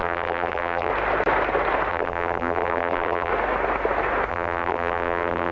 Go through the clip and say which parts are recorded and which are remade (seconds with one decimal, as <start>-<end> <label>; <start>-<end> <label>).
0.0-0.9 remade; 0.9-1.9 recorded; 1.9-3.3 remade; 3.3-4.3 recorded; 4.3-5.5 remade